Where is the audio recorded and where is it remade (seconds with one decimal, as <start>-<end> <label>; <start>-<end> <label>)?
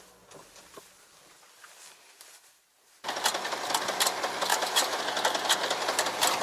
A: 0.0-4.5 recorded; 4.5-5.0 remade; 5.0-6.4 recorded